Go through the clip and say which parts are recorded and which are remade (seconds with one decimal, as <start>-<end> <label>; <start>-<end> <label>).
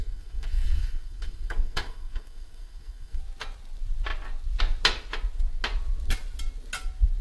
0.0-3.2 remade; 3.2-7.2 recorded